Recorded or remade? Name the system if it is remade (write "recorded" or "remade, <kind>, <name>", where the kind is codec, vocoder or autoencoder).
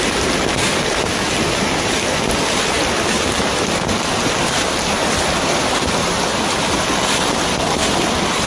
recorded